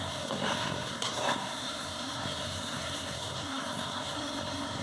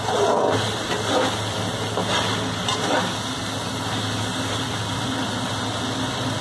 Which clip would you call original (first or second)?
second